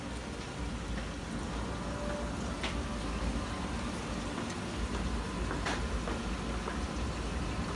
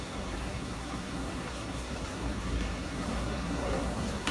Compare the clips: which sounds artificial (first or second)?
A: second